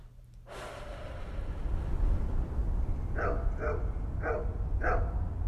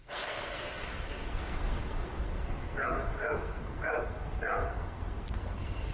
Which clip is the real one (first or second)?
first